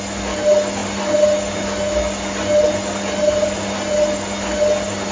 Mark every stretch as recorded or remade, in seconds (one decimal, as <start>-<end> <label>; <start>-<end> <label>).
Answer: 0.0-5.1 recorded